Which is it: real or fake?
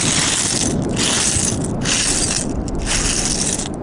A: real